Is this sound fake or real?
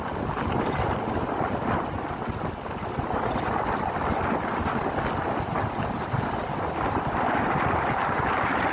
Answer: real